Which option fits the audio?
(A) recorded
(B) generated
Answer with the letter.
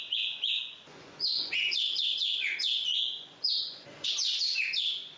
B